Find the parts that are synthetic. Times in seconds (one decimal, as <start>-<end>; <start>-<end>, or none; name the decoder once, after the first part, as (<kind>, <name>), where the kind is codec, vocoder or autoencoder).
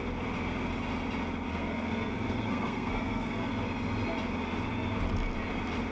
1.5-3.5 (codec, SNAC)